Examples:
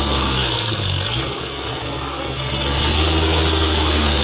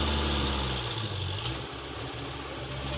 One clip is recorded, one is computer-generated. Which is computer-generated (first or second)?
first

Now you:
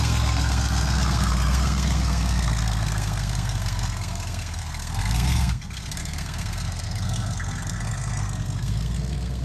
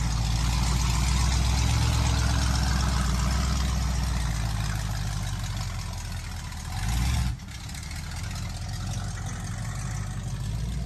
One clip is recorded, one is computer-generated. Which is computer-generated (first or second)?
first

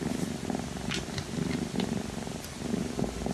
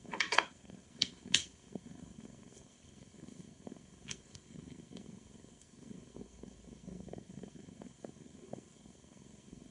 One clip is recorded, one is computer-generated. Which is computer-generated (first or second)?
second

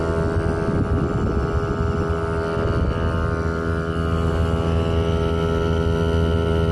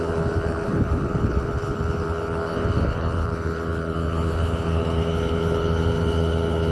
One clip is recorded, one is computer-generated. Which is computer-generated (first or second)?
second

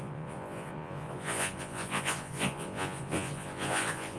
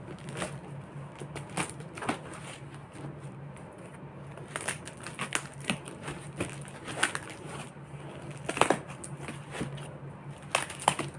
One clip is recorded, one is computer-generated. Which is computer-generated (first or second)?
first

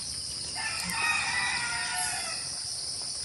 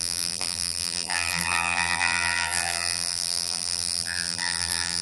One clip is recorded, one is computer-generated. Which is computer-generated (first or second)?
second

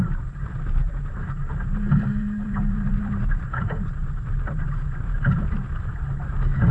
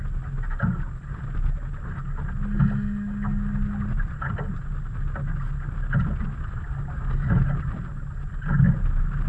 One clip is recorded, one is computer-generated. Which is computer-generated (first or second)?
first